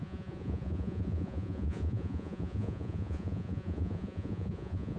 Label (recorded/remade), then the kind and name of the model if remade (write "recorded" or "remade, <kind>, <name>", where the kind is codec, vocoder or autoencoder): remade, vocoder, Vocos